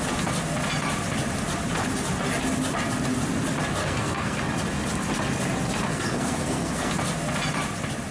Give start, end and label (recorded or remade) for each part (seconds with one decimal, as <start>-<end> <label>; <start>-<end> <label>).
0.0-3.8 recorded; 3.8-4.4 remade; 4.4-5.9 recorded; 5.9-6.9 remade; 6.9-8.1 recorded